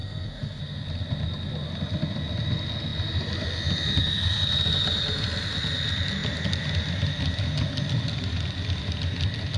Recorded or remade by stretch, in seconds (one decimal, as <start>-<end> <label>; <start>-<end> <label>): 0.0-0.6 remade; 0.6-9.6 recorded